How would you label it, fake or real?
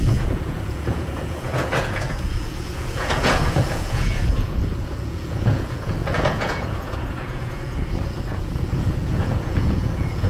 fake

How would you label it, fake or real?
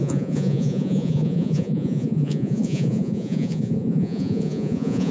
fake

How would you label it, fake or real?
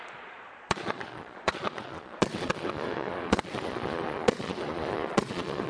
fake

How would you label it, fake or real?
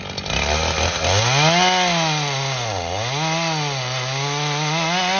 real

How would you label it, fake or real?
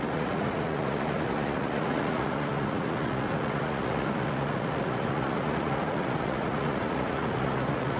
fake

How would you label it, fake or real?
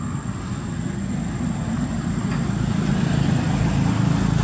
real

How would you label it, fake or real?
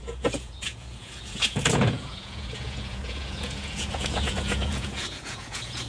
fake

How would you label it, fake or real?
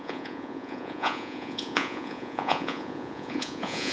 fake